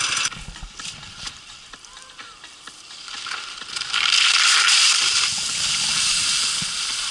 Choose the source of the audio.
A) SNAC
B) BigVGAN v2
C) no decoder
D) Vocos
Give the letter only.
B